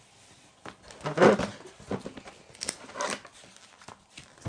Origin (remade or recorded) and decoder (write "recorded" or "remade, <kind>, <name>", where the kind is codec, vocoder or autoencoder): recorded